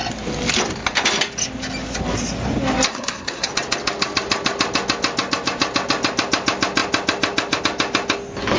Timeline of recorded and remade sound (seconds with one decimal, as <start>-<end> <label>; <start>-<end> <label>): 0.0-2.9 recorded; 2.9-3.5 remade; 3.5-8.6 recorded